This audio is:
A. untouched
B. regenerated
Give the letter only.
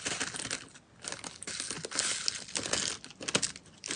A